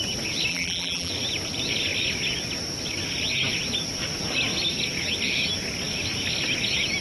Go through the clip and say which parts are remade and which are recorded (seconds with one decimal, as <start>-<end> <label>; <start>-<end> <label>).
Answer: 0.0-0.5 recorded; 0.5-1.1 remade; 1.1-7.0 recorded